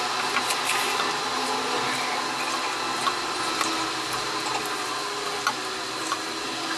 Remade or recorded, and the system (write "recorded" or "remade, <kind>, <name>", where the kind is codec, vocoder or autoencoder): recorded